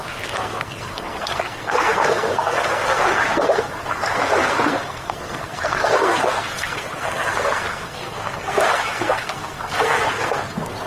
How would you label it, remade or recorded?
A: remade